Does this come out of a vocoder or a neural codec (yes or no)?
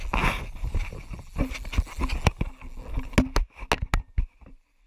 no